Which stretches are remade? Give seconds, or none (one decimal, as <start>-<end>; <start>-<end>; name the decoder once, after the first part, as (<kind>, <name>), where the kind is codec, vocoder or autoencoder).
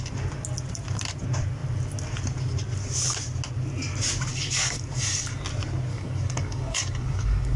4.3-5.4 (codec, DAC); 5.9-7.6